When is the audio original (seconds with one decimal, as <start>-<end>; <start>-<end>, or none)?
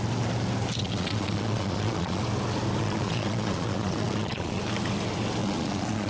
0.0-0.8; 2.2-2.8; 4.6-5.4